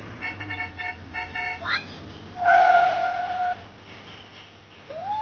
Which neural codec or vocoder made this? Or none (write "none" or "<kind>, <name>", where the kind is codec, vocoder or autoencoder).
none